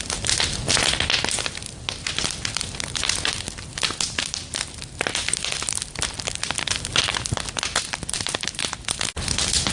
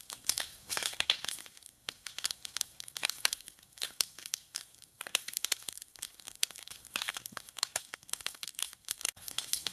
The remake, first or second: second